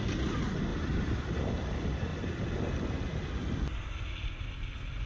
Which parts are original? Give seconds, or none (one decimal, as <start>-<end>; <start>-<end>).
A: 0.0-0.7; 1.3-5.1